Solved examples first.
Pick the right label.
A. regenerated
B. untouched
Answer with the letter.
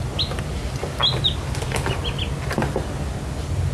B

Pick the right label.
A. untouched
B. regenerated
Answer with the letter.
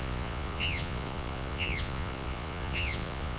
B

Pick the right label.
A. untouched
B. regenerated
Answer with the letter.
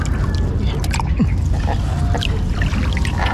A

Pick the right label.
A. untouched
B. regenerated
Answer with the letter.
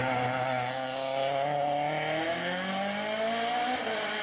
A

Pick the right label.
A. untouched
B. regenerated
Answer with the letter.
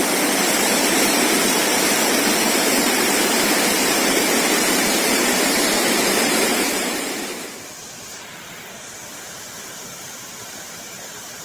B